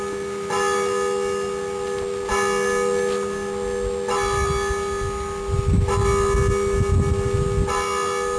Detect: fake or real real